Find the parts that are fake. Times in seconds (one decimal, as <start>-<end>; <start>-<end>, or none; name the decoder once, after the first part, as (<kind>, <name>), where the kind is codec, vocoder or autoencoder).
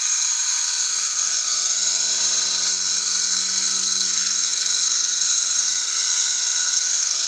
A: 0.0-2.1 (codec, SNAC); 2.7-7.3